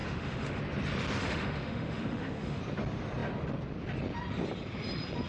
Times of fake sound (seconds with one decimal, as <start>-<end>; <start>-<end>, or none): 0.0-0.6; 1.2-2.6